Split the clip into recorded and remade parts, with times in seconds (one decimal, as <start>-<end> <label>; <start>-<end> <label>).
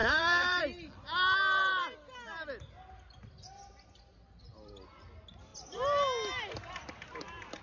0.0-0.6 remade; 0.6-7.6 recorded